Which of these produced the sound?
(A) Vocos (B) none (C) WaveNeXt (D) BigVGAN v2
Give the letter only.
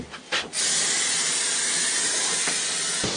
B